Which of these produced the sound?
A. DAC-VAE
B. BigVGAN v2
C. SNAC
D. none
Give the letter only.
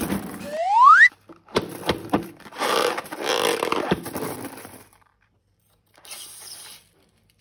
B